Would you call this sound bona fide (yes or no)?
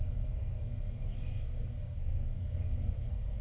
no